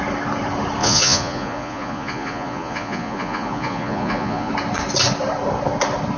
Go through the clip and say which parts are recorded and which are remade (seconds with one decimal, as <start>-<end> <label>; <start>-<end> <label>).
0.0-0.8 recorded; 0.8-4.5 remade; 4.5-6.2 recorded